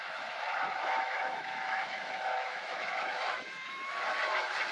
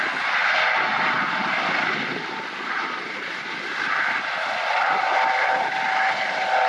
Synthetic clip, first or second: first